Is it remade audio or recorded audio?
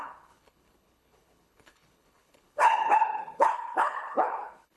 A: remade